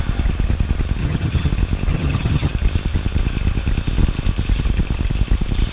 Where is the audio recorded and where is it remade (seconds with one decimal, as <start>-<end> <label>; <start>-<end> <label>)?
0.0-1.0 recorded; 1.0-1.5 remade; 1.5-1.9 recorded; 1.9-2.5 remade; 2.5-5.7 recorded

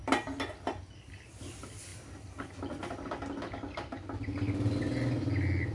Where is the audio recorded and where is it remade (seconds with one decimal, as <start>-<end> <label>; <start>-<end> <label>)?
0.0-1.9 recorded; 1.9-4.2 remade; 4.2-5.7 recorded

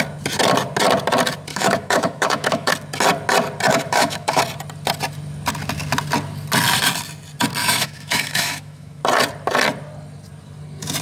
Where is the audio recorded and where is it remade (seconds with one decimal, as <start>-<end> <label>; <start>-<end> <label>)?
0.0-1.5 recorded; 1.5-2.7 remade; 2.7-3.7 recorded; 3.7-4.4 remade; 4.4-7.6 recorded; 7.6-9.0 remade; 9.0-11.0 recorded

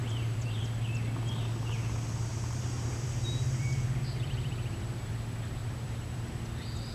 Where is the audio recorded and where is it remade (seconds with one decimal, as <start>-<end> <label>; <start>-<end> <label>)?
0.0-0.6 remade; 0.6-2.3 recorded; 2.3-5.1 remade; 5.1-5.6 recorded; 5.6-6.3 remade; 6.3-6.9 recorded